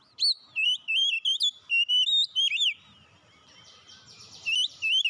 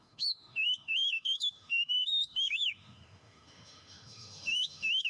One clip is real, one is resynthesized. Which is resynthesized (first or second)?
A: second